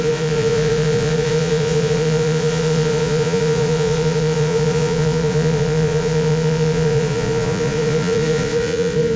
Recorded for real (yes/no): no